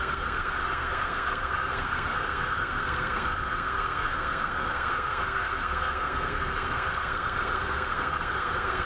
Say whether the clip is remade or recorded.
remade